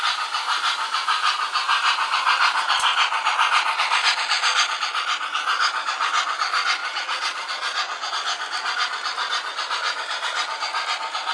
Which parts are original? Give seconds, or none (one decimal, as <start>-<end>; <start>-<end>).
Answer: 0.0-6.8; 8.1-11.3